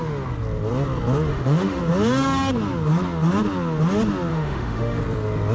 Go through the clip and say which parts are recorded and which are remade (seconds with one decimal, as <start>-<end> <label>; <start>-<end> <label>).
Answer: 0.0-1.3 recorded; 1.3-1.8 remade; 1.8-4.3 recorded; 4.3-5.0 remade; 5.0-5.5 recorded